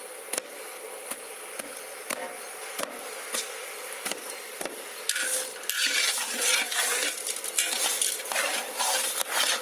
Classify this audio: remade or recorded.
recorded